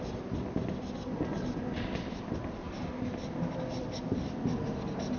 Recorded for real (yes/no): yes